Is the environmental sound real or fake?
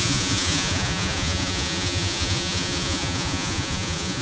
fake